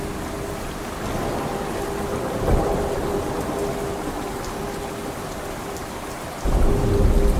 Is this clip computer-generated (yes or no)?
no